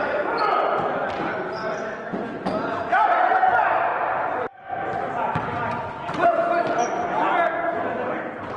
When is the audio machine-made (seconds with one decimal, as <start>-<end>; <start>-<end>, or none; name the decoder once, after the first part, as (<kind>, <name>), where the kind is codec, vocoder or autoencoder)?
none